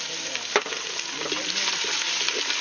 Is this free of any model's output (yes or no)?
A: yes